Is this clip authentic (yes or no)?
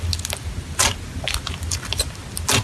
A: yes